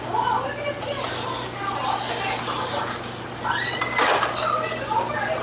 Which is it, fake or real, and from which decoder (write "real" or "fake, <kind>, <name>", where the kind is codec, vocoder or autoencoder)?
real